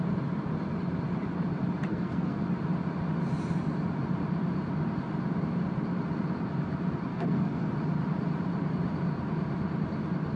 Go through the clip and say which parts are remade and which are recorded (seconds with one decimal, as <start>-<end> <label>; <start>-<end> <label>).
0.0-1.9 recorded; 1.9-2.4 remade; 2.4-7.1 recorded; 7.1-7.7 remade; 7.7-10.4 recorded